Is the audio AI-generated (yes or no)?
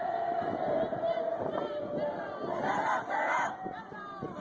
yes